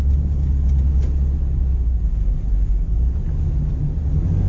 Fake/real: real